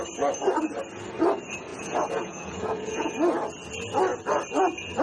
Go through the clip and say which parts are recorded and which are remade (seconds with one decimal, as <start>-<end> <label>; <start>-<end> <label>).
0.0-1.7 recorded; 1.7-3.1 remade; 3.1-5.0 recorded